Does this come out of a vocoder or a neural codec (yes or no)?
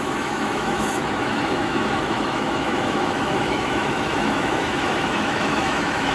yes